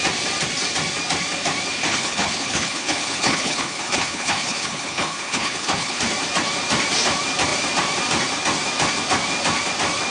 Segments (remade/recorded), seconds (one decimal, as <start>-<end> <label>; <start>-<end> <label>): 0.0-1.8 recorded; 1.8-6.0 remade; 6.0-10.1 recorded

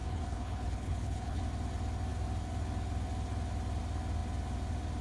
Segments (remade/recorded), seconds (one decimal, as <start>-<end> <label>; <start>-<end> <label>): 0.0-1.4 remade; 1.4-5.0 recorded

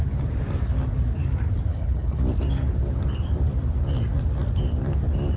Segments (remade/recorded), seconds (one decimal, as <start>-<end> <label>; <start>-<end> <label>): 0.0-1.7 recorded; 1.7-2.2 remade; 2.2-5.4 recorded

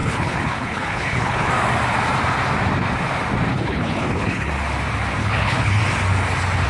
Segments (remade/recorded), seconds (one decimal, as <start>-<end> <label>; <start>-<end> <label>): 0.0-1.5 remade; 1.5-3.5 recorded; 3.5-4.5 remade; 4.5-5.2 recorded; 5.2-5.8 remade; 5.8-6.7 recorded

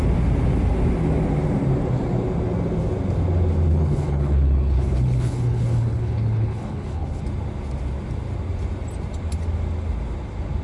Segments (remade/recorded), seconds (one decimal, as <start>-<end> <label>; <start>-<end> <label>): 0.0-3.7 recorded; 3.7-7.2 remade; 7.2-10.6 recorded

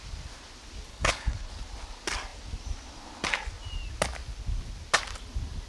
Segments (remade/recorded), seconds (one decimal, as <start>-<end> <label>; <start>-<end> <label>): 0.0-0.9 recorded; 0.9-1.5 remade; 1.5-5.7 recorded

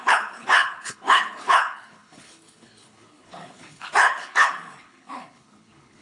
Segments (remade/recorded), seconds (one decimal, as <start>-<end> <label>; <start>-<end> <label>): 0.0-6.0 remade